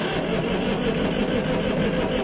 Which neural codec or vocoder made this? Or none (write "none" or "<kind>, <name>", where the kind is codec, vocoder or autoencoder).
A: none